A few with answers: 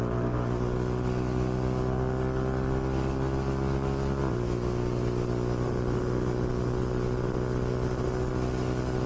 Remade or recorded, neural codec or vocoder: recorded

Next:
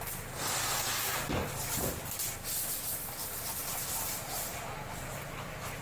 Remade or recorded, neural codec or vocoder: recorded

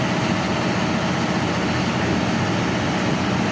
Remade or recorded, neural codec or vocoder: recorded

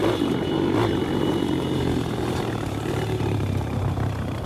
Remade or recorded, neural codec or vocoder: remade, vocoder, BigVGAN v2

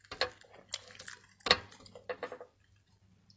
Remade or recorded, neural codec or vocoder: recorded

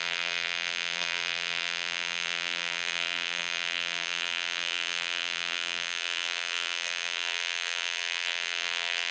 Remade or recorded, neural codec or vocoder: remade, vocoder, BigVGAN v2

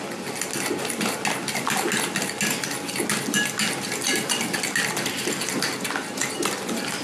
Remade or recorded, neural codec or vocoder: recorded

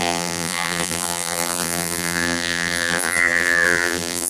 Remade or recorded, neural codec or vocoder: remade, vocoder, BigVGAN v2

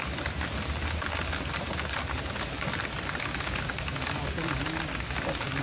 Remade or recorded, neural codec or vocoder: recorded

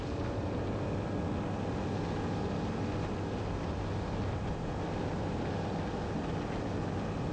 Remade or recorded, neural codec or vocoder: recorded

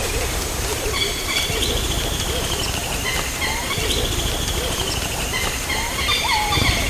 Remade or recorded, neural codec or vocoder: remade, vocoder, BigVGAN v2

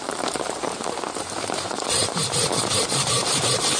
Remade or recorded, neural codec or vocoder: remade, vocoder, BigVGAN v2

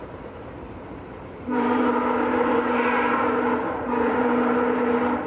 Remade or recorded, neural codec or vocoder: remade, vocoder, BigVGAN v2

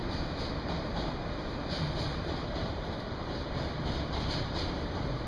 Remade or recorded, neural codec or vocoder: remade, vocoder, BigVGAN v2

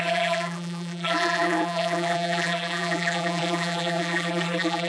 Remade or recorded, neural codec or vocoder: remade, vocoder, BigVGAN v2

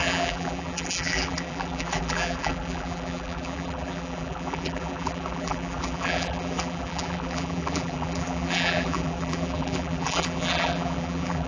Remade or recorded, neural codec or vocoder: remade, vocoder, BigVGAN v2